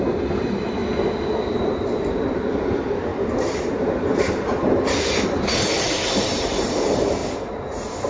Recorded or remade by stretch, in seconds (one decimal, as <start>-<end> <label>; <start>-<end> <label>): 0.0-0.8 remade; 0.8-1.5 recorded; 1.5-7.2 remade; 7.2-8.1 recorded

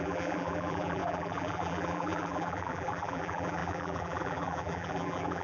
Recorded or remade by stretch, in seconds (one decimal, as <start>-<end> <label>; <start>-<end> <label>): 0.0-5.4 remade